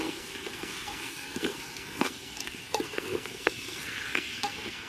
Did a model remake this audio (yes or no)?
yes